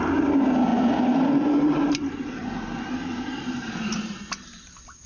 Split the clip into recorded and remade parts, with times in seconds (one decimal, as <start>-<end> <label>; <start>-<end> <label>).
0.0-5.1 recorded